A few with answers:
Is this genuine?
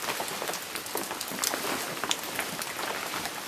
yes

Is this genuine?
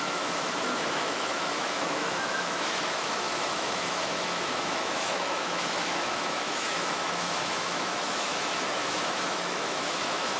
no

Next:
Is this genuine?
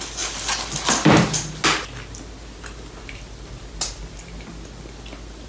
yes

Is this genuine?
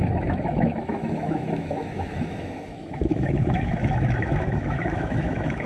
no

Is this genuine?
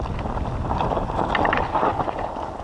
yes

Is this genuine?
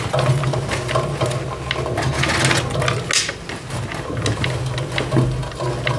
yes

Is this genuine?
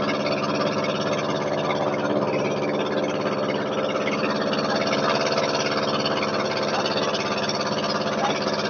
yes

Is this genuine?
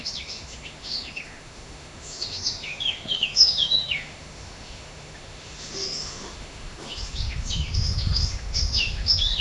no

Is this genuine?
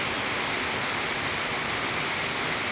yes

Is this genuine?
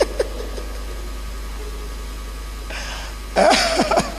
yes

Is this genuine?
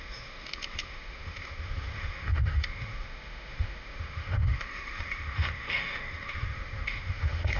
no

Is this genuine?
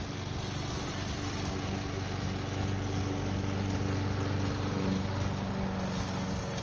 yes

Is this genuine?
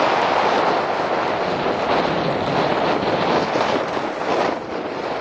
yes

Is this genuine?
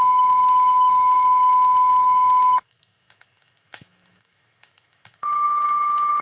no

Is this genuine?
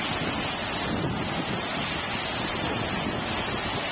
yes